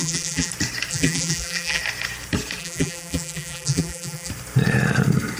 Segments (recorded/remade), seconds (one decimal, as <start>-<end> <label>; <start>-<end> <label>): 0.0-0.5 remade; 0.5-0.9 recorded; 0.9-1.8 remade; 1.8-2.6 recorded; 2.6-4.3 remade; 4.3-5.4 recorded